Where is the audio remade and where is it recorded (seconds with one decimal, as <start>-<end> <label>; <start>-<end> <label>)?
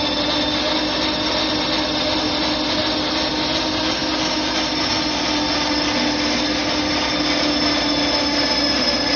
0.0-9.2 recorded